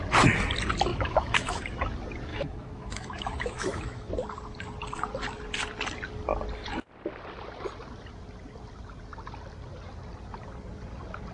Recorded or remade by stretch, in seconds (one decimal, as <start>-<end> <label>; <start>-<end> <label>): 0.0-0.9 recorded; 0.9-1.6 remade; 1.6-2.3 recorded; 2.3-4.1 remade; 4.1-11.3 recorded